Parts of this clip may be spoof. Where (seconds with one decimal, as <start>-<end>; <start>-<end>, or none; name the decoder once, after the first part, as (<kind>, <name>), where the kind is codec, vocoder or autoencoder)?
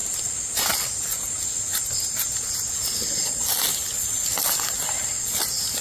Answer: none